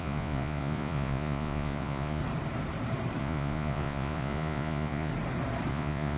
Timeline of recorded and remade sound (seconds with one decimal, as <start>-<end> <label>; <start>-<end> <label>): 0.0-2.2 remade; 2.2-3.2 recorded; 3.2-5.1 remade; 5.1-5.7 recorded; 5.7-6.2 remade

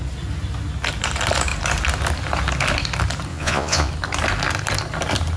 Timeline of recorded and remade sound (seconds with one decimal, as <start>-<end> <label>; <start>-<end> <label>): 0.0-3.3 recorded; 3.3-3.9 remade; 3.9-5.4 recorded

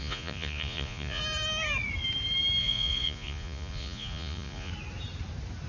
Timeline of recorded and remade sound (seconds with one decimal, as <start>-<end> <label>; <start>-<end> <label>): 0.0-1.2 remade; 1.2-2.6 recorded; 2.6-4.7 remade; 4.7-5.7 recorded

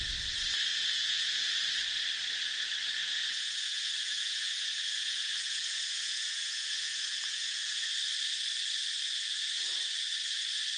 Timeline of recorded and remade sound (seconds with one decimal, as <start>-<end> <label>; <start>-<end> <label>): 0.0-0.7 recorded; 0.7-1.5 remade; 1.5-3.0 recorded; 3.0-7.9 remade; 7.9-10.8 recorded